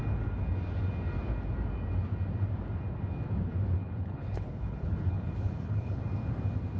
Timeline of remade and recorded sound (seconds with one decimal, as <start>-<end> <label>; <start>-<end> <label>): 0.0-3.8 recorded; 3.8-6.0 remade; 6.0-6.8 recorded